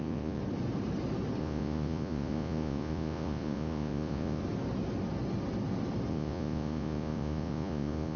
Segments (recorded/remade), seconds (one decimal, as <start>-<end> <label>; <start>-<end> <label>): 0.0-0.4 remade; 0.4-1.4 recorded; 1.4-4.4 remade; 4.4-6.1 recorded; 6.1-8.2 remade